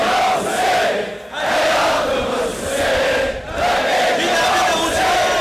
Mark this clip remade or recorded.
recorded